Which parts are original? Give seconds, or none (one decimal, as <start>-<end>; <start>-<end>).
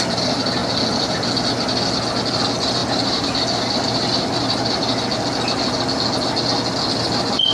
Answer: 0.0-2.8; 4.8-7.5